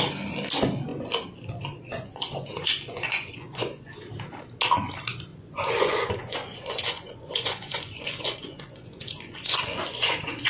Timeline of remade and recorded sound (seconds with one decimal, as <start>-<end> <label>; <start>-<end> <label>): 0.0-1.9 recorded; 1.9-3.9 remade; 3.9-5.3 recorded; 5.3-10.5 remade